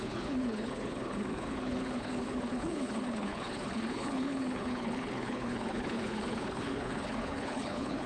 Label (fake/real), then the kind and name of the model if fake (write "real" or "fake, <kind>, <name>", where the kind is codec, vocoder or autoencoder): fake, codec, HILCodec